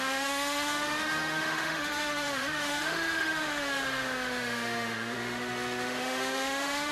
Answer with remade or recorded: remade